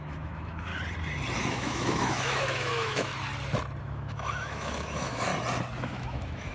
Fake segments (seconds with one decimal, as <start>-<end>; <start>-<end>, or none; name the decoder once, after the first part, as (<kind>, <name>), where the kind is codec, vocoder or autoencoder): 0.0-0.7 (autoencoder, DAC-VAE); 1.4-3.1; 3.8-5.3; 5.8-6.5